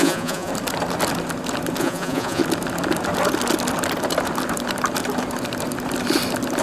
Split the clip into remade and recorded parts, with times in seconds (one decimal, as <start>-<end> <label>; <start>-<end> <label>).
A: 0.0-0.5 remade; 0.5-1.8 recorded; 1.8-2.4 remade; 2.4-6.6 recorded